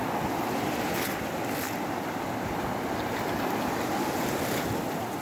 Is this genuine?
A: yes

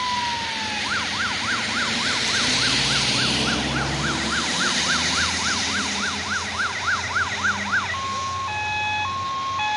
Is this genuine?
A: yes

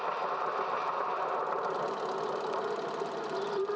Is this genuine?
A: yes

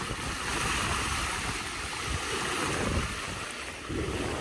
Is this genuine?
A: yes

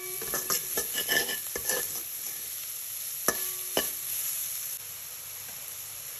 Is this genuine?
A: yes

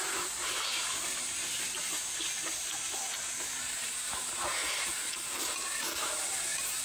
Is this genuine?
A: yes